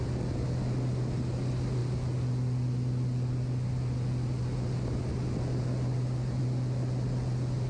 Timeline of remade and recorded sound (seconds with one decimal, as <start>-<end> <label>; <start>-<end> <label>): 0.0-7.7 recorded